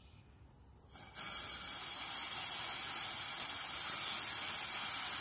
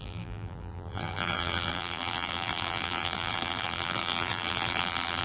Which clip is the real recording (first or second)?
first